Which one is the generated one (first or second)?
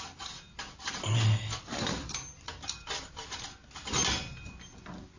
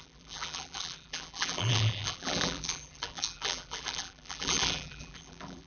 second